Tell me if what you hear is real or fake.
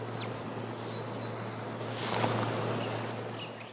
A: real